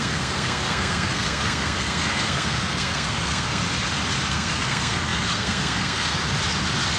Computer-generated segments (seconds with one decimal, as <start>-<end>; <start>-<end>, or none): 0.0-3.6; 4.3-6.2

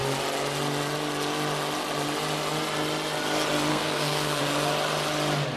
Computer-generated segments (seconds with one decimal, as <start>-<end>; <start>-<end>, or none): 3.7-4.4

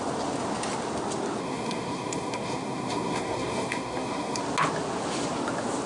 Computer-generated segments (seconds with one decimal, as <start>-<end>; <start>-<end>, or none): 1.4-4.4

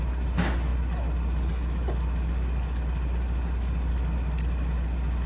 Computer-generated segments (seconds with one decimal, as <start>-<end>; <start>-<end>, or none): none

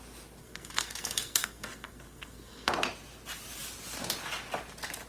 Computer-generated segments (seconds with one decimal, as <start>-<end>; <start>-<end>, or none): 0.4-2.7

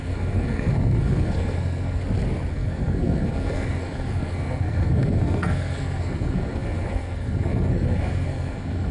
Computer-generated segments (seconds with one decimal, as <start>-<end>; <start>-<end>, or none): 0.0-2.0; 2.5-8.9